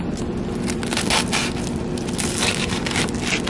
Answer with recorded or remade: recorded